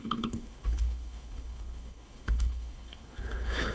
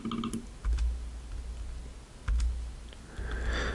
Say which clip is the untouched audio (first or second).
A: second